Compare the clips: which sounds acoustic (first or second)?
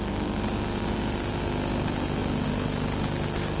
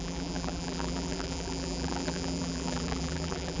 first